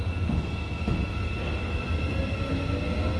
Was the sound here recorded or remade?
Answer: recorded